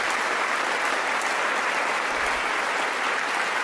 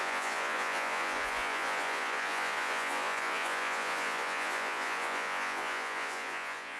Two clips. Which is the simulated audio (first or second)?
second